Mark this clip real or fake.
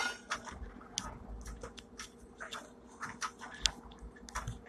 real